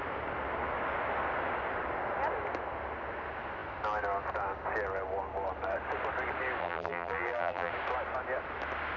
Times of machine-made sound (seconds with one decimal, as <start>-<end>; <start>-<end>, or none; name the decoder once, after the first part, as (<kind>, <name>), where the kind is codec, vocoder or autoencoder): 6.6-7.7 (vocoder, BigVGAN v2)

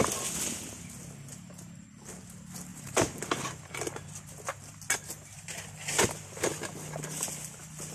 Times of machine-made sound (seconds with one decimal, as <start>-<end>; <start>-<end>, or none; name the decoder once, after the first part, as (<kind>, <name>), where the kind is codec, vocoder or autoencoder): 2.7-3.2 (vocoder, BigVGAN v2)

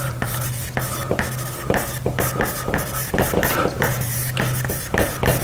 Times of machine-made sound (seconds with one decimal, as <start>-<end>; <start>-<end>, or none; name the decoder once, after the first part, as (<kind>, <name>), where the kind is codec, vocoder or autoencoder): 0.0-0.6 (vocoder, BigVGAN v2); 3.8-4.2

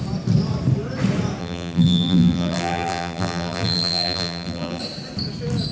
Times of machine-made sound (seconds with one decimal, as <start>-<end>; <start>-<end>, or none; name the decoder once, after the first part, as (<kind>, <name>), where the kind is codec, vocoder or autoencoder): 1.4-4.8 (vocoder, BigVGAN v2)